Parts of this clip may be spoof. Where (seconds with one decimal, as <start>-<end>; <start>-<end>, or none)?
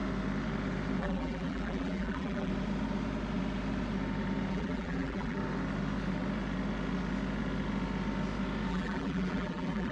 1.0-2.5; 4.5-5.4; 8.7-9.9